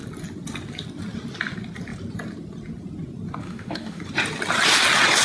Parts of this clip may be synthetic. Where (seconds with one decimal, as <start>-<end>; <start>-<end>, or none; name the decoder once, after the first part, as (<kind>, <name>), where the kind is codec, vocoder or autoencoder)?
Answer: 3.4-4.0 (autoencoder, DAC-VAE)